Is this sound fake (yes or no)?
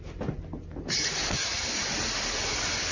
no